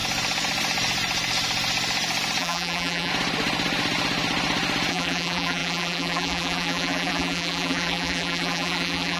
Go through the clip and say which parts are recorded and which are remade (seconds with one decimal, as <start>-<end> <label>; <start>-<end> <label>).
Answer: 0.0-2.4 recorded; 2.4-3.1 remade; 3.1-4.9 recorded; 4.9-9.2 remade